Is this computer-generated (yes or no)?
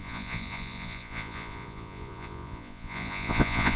yes